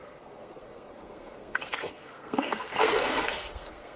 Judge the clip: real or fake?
fake